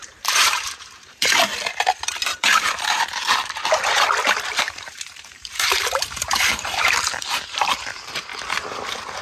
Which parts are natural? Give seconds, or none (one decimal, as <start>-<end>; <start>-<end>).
1.5-2.2; 3.2-4.6; 8.3-9.2